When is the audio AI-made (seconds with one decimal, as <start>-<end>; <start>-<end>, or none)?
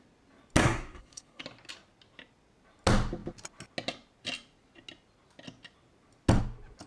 0.6-1.4